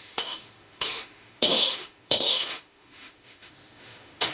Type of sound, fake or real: fake